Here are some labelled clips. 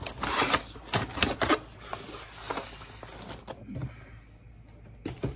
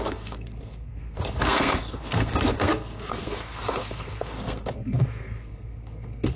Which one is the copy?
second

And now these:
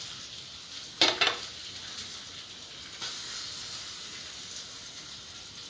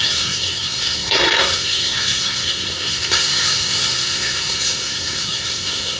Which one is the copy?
second